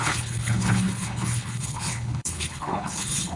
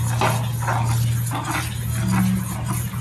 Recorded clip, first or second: second